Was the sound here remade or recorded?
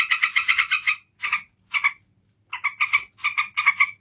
recorded